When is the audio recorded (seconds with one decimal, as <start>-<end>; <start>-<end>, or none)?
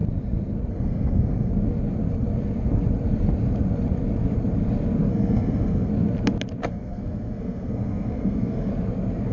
0.0-0.7; 1.5-5.1; 5.9-6.7; 8.7-9.3